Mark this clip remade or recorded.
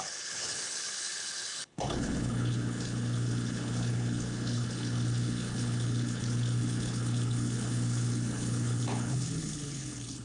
remade